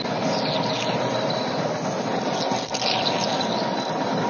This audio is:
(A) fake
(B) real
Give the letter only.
B